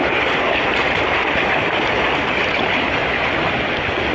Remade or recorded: recorded